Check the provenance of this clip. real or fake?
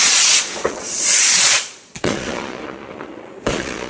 fake